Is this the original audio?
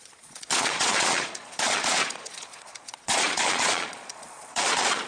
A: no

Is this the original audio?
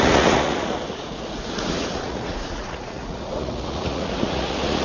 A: no